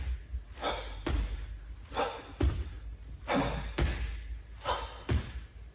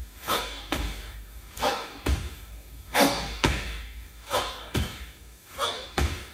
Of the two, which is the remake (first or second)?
second